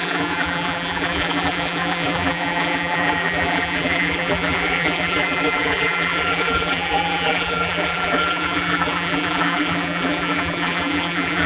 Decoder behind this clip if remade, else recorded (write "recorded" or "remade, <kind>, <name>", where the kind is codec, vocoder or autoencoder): remade, vocoder, BigVGAN v2